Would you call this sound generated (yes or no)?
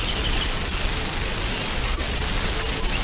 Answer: no